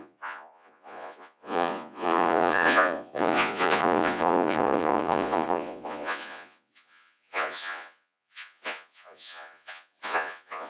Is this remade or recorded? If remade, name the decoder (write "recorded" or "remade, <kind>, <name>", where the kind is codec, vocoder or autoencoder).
remade, vocoder, Vocos